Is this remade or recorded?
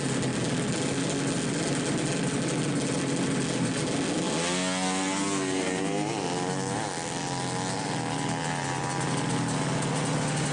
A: recorded